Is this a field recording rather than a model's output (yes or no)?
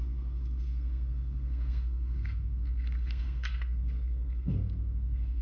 no